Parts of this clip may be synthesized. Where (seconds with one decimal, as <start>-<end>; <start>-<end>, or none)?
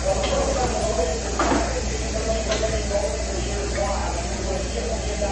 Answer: 4.0-4.6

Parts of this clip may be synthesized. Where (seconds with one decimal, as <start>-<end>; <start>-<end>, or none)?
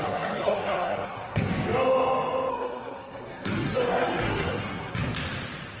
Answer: 0.0-1.5; 2.5-5.0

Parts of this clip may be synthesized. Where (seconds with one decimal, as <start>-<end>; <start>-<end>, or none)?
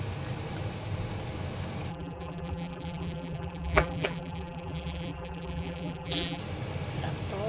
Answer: 1.9-6.4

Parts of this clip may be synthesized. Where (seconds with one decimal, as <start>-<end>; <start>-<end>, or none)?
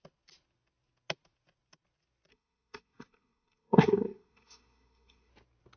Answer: 2.3-5.3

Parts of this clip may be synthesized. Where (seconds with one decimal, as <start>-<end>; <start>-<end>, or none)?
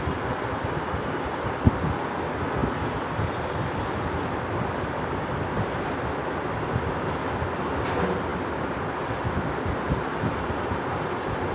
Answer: none